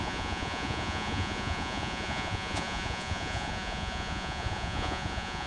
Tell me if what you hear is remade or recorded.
remade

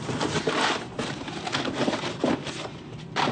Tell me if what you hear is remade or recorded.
remade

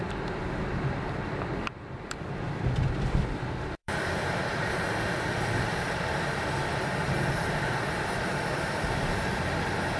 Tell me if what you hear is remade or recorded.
remade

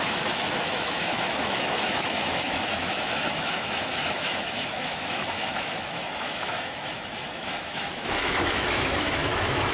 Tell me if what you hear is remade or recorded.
remade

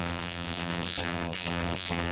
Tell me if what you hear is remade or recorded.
remade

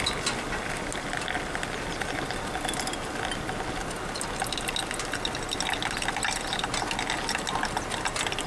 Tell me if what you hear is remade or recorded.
recorded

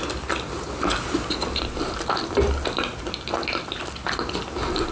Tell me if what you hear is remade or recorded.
recorded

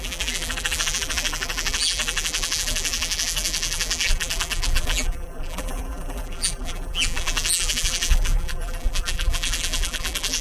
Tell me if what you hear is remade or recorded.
remade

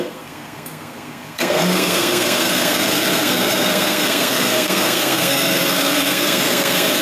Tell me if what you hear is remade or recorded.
remade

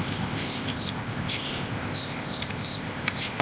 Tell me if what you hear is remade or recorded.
remade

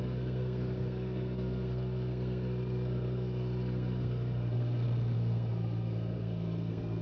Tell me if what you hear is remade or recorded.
remade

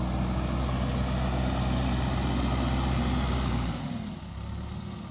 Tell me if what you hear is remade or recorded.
recorded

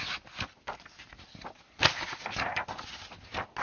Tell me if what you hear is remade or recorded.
recorded